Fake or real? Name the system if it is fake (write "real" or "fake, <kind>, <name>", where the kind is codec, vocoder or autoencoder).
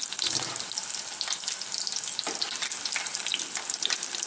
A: real